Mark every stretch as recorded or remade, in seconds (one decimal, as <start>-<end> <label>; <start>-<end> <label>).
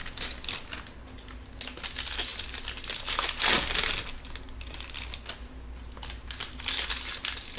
0.0-7.6 recorded